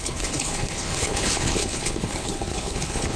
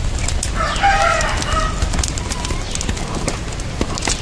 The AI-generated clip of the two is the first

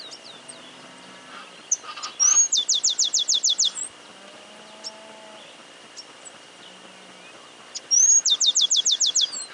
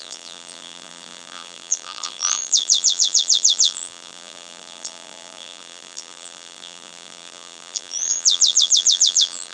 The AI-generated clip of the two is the second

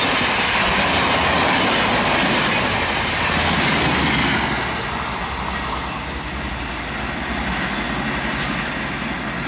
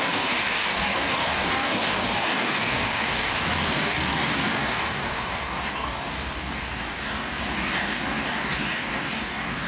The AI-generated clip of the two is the second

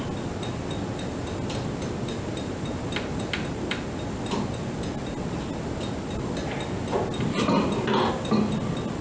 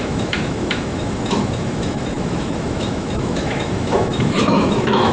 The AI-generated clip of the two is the second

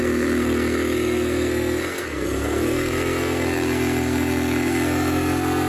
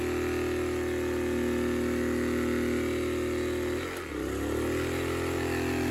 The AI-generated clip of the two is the first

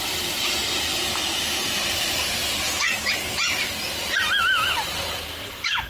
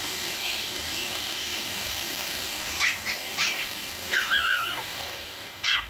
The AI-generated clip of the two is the second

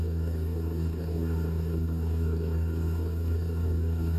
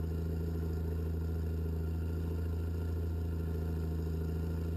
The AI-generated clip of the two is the first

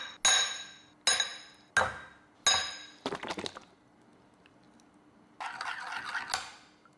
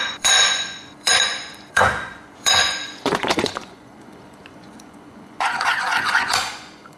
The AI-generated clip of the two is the second